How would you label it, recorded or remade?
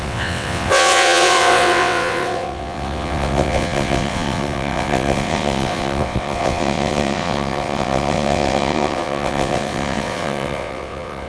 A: remade